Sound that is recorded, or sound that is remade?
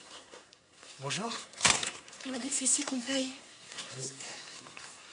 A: remade